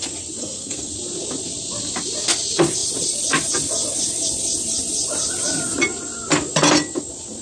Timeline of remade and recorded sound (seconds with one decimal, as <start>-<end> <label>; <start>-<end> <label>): 0.0-0.4 recorded; 0.4-0.9 remade; 0.9-7.4 recorded